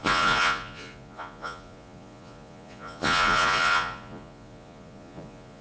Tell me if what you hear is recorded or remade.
remade